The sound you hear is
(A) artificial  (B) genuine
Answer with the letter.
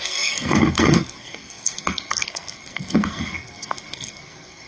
A